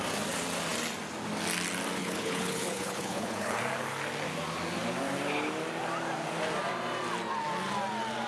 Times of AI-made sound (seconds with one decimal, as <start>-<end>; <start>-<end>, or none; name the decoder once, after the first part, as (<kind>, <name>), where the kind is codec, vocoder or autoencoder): 2.0-3.6 (codec, HILCodec)